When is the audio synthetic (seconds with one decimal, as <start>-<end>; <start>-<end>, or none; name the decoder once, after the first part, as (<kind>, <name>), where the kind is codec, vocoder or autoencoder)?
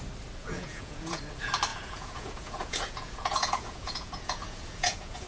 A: 0.4-1.2 (vocoder, Vocos); 1.7-5.3